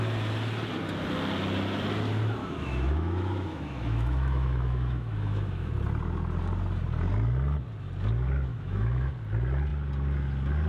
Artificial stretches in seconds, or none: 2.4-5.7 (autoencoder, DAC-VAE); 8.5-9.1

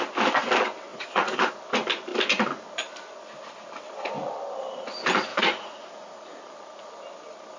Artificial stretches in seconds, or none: 0.9-1.5 (vocoder, Vocos); 5.3-6.4

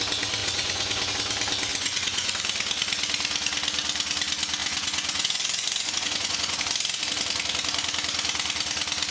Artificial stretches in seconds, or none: 0.4-1.1 (vocoder, Vocos); 1.7-2.4; 4.6-6.6

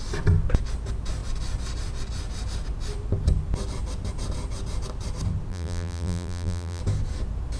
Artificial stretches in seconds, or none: 5.5-6.8 (vocoder, BigVGAN v2)